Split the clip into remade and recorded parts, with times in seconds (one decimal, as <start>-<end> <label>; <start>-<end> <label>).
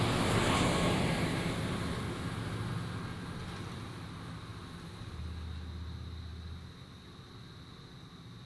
0.0-8.5 recorded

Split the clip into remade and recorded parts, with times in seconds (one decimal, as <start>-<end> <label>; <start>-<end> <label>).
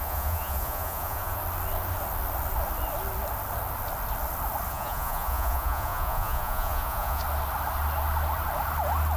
0.0-1.4 remade; 1.4-4.7 recorded; 4.7-7.2 remade; 7.2-9.2 recorded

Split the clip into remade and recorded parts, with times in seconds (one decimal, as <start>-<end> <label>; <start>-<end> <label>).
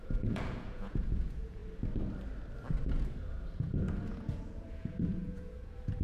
0.0-1.6 remade; 1.6-2.9 recorded; 2.9-6.0 remade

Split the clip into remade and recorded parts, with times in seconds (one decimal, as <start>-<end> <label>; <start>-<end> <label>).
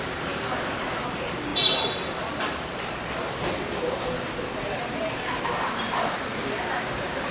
0.0-7.3 remade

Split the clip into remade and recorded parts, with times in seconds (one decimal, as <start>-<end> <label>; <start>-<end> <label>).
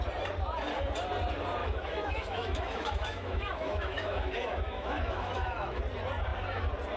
0.0-1.6 recorded; 1.6-5.8 remade; 5.8-7.0 recorded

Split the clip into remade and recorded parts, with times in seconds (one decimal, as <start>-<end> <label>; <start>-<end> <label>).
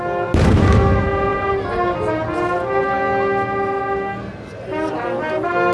0.0-5.7 recorded